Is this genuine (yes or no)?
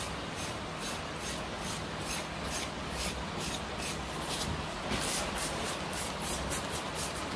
yes